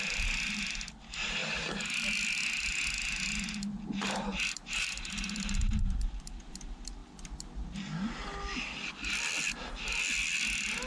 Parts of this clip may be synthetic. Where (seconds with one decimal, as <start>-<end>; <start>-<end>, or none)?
4.6-6.4